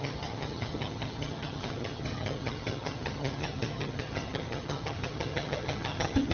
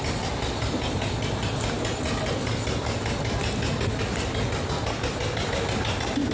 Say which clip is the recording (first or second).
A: second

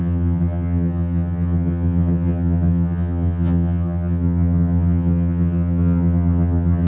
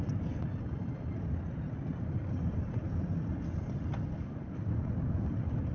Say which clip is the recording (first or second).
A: second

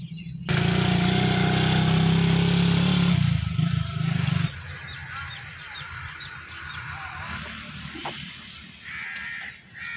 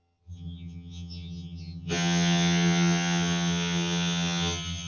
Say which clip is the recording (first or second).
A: first